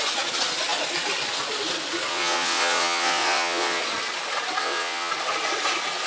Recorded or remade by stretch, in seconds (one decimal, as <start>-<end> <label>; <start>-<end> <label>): 0.0-2.1 recorded; 2.1-3.8 remade; 3.8-4.6 recorded; 4.6-5.1 remade; 5.1-6.1 recorded